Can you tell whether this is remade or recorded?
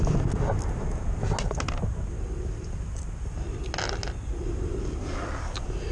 recorded